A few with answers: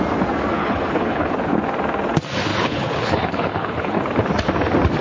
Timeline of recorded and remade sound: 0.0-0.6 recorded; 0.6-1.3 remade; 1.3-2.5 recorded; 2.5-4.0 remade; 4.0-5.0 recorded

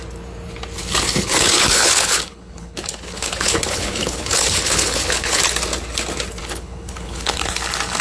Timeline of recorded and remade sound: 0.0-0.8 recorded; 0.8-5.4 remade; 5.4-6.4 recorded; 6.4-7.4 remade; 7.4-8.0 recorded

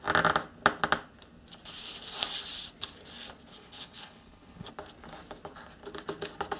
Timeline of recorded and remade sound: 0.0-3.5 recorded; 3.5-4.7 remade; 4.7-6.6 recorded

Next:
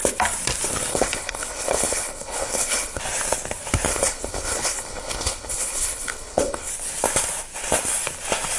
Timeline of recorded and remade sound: 0.0-0.9 recorded; 0.9-3.0 remade; 3.0-3.9 recorded; 3.9-6.7 remade; 6.7-8.6 recorded